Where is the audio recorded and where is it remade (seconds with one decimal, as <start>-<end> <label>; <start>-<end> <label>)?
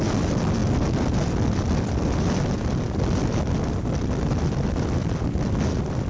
0.0-6.1 recorded